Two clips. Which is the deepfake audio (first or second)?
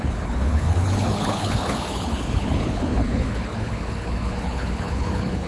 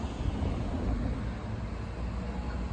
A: first